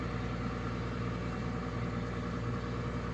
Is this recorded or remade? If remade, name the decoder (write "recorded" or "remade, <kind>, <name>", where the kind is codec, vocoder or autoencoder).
recorded